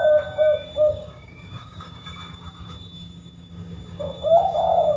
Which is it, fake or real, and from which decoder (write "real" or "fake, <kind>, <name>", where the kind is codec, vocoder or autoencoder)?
fake, codec, DAC